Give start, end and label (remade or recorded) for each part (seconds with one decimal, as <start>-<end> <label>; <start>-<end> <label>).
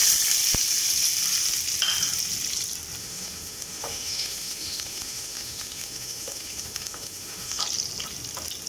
0.0-3.0 recorded; 3.0-7.6 remade; 7.6-8.7 recorded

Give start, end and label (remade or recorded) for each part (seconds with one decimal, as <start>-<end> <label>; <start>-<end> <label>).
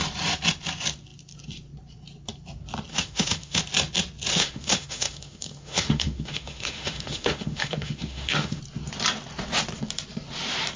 0.0-2.9 recorded; 2.9-3.6 remade; 3.6-4.3 recorded; 4.3-8.6 remade; 8.6-10.8 recorded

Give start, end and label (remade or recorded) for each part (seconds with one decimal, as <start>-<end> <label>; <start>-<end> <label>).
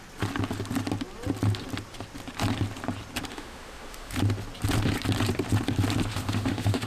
0.0-3.3 recorded; 3.3-4.1 remade; 4.1-6.1 recorded; 6.1-6.9 remade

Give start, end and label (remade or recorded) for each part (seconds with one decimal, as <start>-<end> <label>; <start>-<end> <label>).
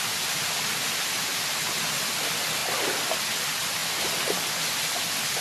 0.0-5.4 recorded